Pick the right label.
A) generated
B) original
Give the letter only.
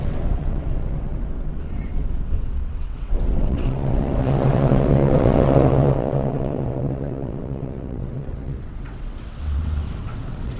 A